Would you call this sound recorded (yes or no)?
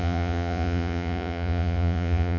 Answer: no